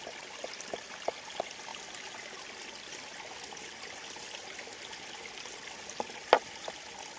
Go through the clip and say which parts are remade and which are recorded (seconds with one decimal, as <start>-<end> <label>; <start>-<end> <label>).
0.0-7.2 recorded